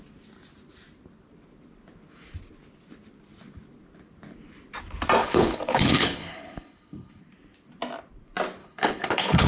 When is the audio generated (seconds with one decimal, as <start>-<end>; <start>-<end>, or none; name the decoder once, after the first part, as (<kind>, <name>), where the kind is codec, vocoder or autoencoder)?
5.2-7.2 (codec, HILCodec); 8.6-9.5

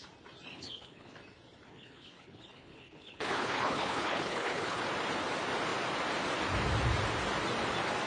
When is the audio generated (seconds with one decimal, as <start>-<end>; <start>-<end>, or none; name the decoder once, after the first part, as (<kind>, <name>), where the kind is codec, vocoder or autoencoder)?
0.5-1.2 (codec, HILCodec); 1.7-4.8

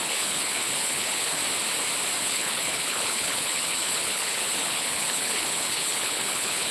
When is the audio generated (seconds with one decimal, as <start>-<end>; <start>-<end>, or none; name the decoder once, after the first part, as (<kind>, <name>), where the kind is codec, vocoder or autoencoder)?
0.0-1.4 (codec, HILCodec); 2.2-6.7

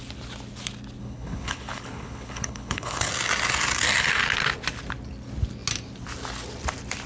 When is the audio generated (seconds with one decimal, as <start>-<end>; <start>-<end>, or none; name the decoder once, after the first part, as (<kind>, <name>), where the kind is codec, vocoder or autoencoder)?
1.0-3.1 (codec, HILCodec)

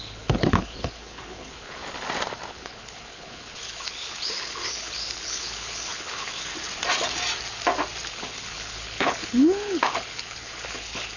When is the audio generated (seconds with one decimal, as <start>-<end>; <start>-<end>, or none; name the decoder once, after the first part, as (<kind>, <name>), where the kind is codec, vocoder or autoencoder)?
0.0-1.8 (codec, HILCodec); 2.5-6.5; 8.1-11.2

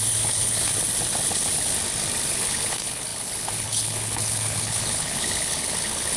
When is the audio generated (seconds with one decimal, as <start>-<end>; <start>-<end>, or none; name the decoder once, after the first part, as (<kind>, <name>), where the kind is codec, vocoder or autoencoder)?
0.0-0.7 (codec, HILCodec); 2.3-6.2